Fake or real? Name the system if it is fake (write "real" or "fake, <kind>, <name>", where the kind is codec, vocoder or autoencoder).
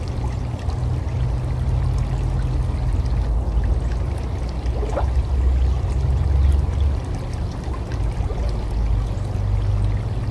real